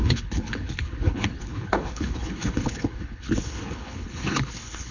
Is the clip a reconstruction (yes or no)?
yes